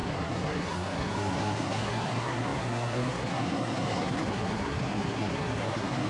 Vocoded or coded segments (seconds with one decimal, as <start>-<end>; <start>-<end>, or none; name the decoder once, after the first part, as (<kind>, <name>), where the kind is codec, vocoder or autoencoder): 0.0-6.1 (codec, SNAC)